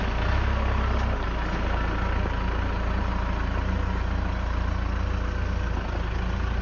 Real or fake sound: real